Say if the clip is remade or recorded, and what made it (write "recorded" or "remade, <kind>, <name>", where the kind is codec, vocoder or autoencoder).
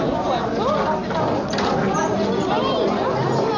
recorded